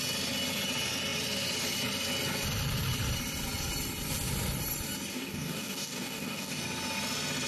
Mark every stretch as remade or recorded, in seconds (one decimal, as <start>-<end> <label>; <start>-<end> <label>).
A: 0.0-5.1 recorded; 5.1-6.6 remade; 6.6-7.5 recorded